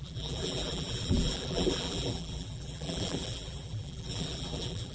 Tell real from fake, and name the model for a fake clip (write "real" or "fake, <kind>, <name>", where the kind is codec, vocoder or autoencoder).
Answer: fake, vocoder, BigVGAN v2